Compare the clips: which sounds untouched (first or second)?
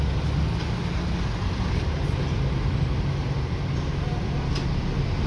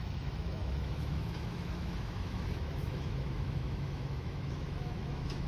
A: first